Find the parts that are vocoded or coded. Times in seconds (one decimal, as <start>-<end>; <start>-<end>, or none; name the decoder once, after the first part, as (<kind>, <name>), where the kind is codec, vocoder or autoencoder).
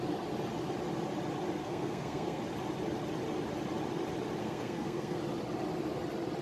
1.6-2.4 (codec, SNAC); 4.4-5.2